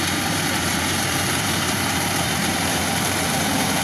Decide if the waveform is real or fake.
fake